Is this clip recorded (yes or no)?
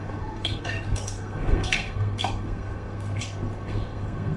no